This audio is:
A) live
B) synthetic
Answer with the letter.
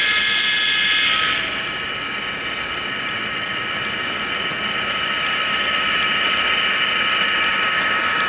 A